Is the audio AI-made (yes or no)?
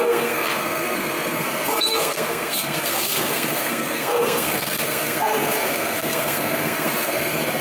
yes